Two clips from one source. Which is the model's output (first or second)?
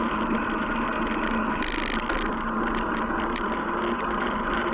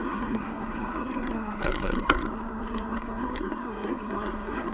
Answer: second